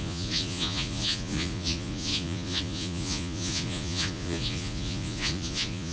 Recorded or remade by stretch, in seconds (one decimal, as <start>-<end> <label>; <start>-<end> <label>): 0.0-5.9 remade